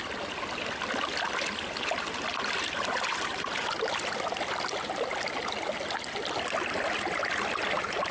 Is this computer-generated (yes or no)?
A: no